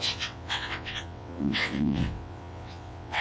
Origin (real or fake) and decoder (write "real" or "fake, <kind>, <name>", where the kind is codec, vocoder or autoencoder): fake, vocoder, WaveNeXt